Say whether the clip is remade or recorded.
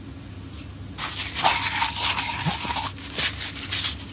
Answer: recorded